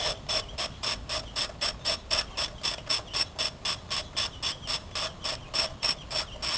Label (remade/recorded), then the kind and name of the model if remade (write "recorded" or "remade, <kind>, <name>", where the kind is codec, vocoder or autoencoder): recorded